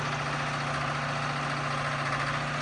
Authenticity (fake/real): real